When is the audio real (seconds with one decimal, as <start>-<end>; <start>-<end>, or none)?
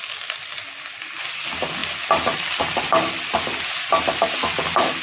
0.0-5.0